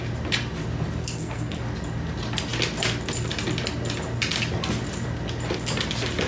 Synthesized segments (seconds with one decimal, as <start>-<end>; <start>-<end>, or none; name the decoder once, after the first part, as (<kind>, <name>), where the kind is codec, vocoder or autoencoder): 1.0-1.6 (codec, SNAC)